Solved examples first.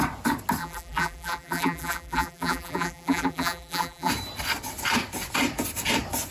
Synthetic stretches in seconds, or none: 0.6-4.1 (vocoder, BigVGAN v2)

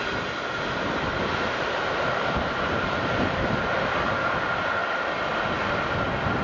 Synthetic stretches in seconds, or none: none